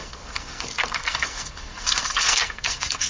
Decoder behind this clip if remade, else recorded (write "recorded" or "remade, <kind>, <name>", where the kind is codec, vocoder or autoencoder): remade, codec, SNAC